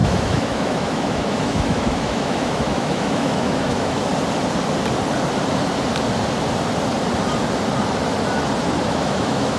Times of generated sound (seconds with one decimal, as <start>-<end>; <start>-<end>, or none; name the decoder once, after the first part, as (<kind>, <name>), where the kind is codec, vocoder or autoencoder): 0.0-4.1 (autoencoder, DAC-VAE); 8.8-9.6